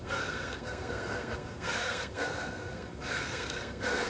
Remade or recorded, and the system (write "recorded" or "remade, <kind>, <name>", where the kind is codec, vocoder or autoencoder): remade, codec, SNAC